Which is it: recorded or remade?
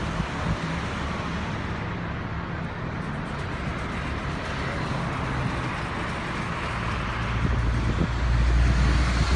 recorded